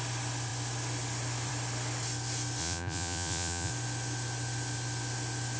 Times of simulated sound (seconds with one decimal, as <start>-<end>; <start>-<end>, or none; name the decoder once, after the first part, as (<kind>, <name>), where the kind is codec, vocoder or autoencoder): 2.6-3.7 (vocoder, Vocos)